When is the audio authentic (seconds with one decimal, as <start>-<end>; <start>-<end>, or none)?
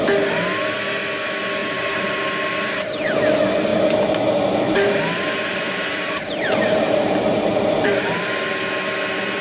0.0-1.6; 2.2-3.7; 7.9-9.4